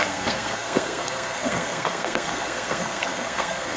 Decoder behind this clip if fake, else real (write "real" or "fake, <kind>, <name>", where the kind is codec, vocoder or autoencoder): fake, codec, SNAC